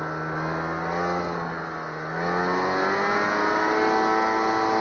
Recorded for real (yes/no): yes